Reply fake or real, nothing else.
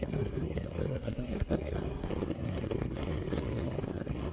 fake